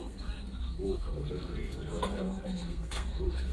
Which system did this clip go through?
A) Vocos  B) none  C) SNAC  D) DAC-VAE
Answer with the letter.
C